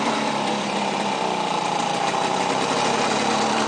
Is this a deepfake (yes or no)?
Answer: no